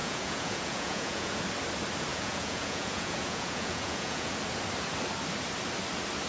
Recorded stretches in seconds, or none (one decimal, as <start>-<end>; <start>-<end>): 1.4-2.1; 4.3-6.3